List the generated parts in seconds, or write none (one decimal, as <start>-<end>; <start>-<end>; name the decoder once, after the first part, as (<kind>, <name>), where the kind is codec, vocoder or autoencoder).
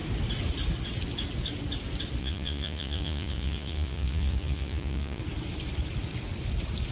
2.2-5.2 (vocoder, Vocos)